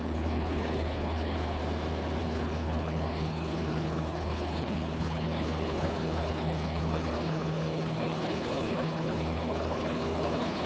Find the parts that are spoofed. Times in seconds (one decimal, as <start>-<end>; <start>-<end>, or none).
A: 0.0-1.6; 2.2-10.7